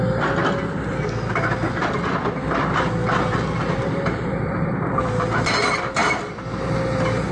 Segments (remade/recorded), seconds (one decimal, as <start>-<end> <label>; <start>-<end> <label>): 0.0-3.0 recorded; 3.0-4.9 remade; 4.9-7.3 recorded